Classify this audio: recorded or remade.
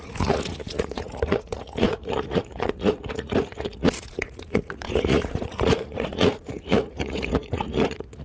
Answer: remade